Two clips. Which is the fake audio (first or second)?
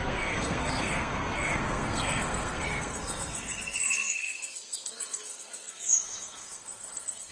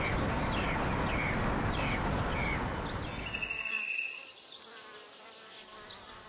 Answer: first